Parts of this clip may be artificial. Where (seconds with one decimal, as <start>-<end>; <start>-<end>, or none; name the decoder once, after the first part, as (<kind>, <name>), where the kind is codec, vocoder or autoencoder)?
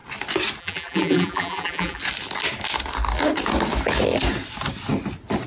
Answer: 0.6-2.0 (vocoder, BigVGAN v2)